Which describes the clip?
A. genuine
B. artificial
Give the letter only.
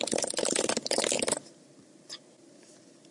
A